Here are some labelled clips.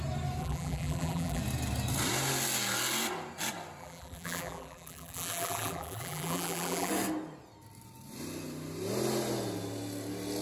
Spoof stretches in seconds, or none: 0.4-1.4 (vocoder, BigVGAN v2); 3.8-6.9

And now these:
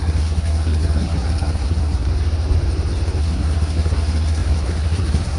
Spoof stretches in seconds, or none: 0.0-2.1 (codec, SNAC); 3.2-5.4

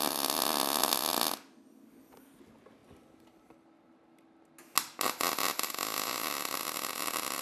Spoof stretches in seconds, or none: none

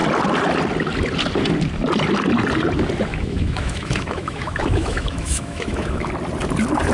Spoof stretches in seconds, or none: 3.1-6.1 (autoencoder, DAC-VAE)

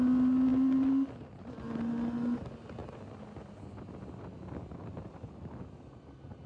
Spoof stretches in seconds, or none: none

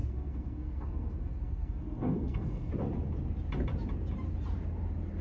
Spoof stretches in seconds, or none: 0.0-2.7 (codec, SNAC)